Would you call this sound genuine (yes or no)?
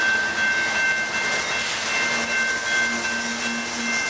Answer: yes